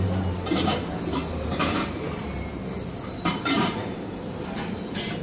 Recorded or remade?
remade